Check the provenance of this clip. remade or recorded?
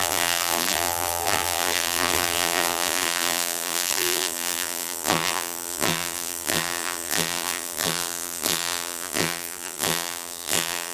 remade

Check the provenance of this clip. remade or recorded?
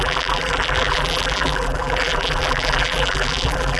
remade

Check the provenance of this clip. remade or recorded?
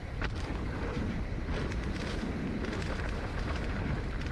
remade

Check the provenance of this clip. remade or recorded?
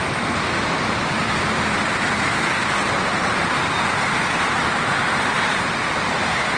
remade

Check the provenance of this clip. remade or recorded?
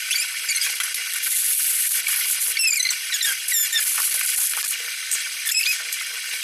remade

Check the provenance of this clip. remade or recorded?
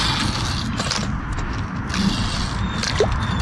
recorded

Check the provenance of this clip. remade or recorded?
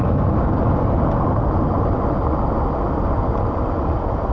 recorded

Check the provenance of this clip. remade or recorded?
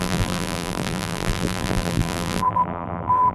remade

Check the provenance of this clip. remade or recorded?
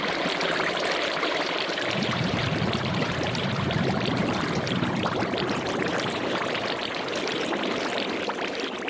remade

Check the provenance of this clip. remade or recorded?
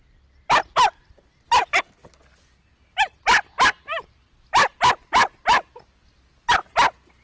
recorded